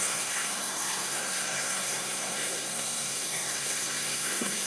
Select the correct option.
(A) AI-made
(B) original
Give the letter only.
A